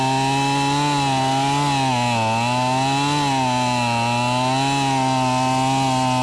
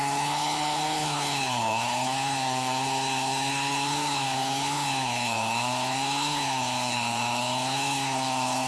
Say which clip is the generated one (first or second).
second